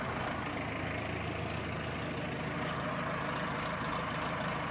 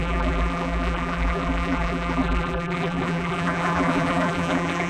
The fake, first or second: second